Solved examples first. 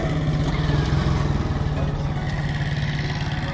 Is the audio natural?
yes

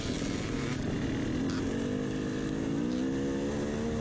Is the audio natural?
yes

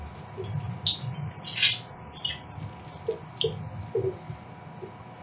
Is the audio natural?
yes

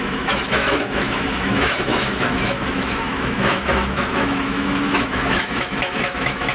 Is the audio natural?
no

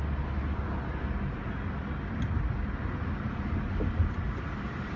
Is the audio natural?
yes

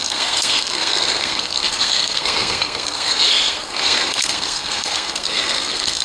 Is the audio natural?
no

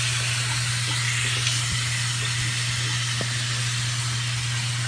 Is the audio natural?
yes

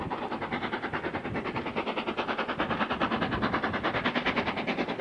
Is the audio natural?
yes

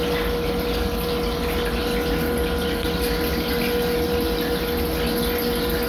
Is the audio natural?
yes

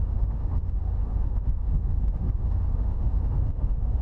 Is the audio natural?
no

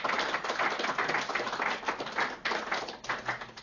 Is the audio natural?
yes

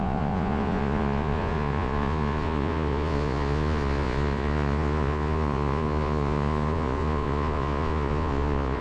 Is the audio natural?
no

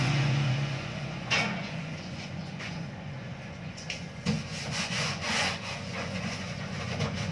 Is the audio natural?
no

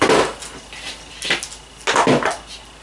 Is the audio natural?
yes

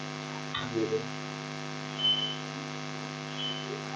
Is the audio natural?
yes